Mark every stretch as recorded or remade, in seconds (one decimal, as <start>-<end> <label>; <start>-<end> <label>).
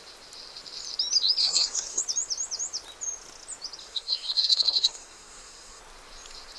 0.0-1.4 recorded; 1.4-2.0 remade; 2.0-3.8 recorded; 3.8-5.8 remade; 5.8-6.6 recorded